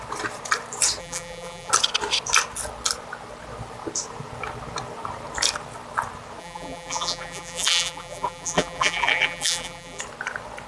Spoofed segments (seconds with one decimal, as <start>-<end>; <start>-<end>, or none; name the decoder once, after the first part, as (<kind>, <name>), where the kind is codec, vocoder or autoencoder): 1.0-1.7 (vocoder, BigVGAN v2); 6.4-10.0